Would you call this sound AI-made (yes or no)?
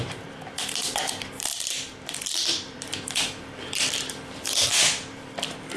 yes